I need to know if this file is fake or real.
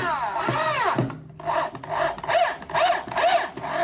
real